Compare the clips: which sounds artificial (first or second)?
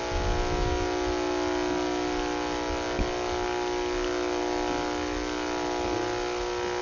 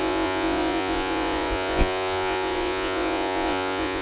second